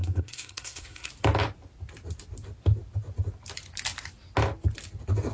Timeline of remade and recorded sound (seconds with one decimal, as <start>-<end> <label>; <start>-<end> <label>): 0.0-1.1 remade; 1.1-5.3 recorded